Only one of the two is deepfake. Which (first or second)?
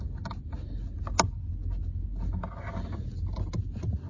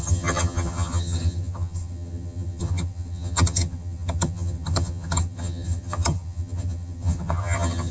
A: second